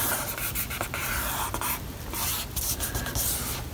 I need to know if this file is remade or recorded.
recorded